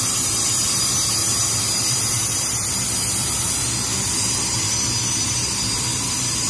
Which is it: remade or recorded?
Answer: recorded